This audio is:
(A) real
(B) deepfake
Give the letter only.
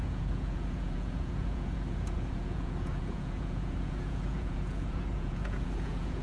B